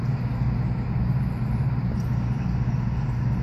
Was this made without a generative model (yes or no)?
yes